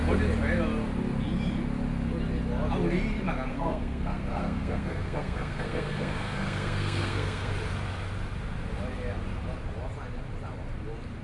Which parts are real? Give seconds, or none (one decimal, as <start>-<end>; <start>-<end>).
0.0-3.5; 7.5-11.2